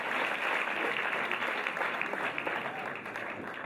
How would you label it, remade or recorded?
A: recorded